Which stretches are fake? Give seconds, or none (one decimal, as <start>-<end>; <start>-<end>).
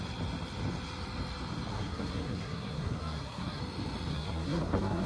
1.7-3.6; 4.1-5.1